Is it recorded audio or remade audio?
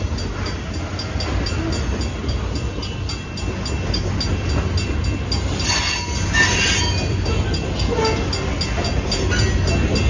recorded